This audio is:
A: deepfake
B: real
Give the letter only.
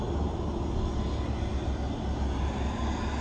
B